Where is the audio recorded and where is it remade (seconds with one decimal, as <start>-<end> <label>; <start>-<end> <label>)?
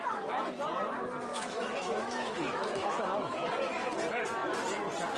0.0-1.3 recorded; 1.3-3.5 remade; 3.5-5.2 recorded